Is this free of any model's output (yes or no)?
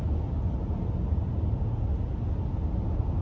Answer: yes